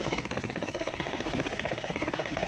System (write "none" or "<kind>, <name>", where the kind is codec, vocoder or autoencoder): codec, SNAC